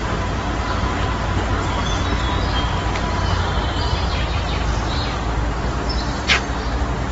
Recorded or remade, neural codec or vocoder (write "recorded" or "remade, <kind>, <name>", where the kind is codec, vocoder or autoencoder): recorded